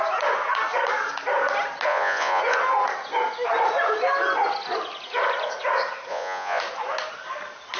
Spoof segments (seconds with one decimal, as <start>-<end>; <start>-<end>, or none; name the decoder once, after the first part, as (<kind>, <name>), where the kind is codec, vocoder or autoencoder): 1.9-2.4 (vocoder, Vocos); 6.1-6.6